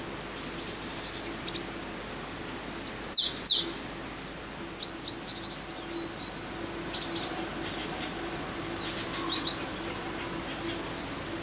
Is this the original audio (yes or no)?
yes